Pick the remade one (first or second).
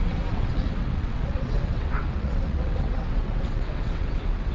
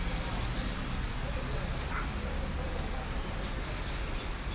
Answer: first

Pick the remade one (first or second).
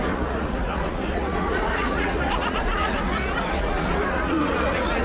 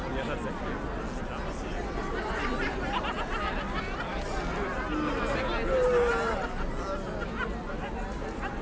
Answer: first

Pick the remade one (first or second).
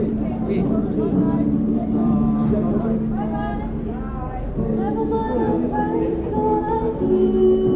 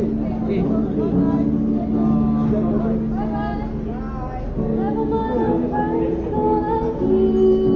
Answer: first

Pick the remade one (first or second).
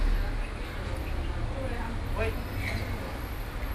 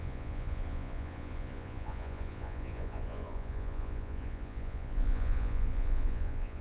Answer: second